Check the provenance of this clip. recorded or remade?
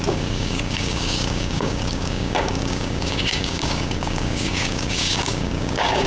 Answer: remade